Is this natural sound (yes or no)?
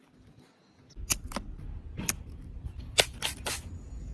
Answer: yes